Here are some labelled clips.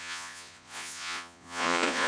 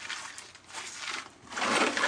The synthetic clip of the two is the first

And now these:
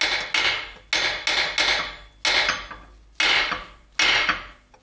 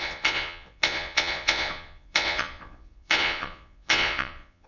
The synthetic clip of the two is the second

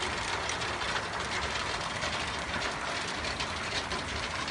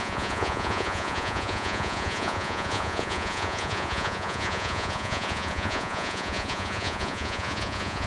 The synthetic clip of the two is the second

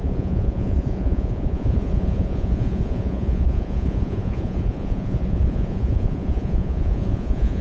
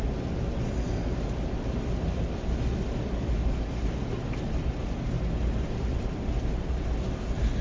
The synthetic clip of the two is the first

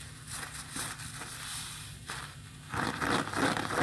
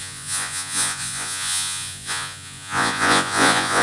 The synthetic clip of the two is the second